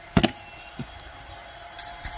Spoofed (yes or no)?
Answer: no